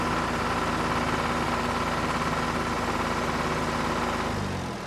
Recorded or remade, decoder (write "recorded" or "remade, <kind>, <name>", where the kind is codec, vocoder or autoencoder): recorded